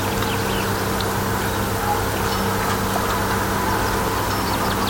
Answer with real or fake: real